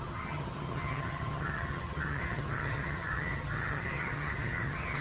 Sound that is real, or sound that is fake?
fake